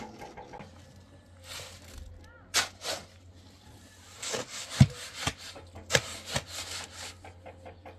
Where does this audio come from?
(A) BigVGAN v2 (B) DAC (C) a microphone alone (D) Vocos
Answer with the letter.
C